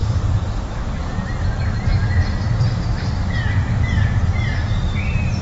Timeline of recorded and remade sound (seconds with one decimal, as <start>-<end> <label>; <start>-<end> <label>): 0.0-5.4 recorded